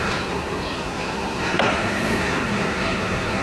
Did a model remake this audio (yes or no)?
yes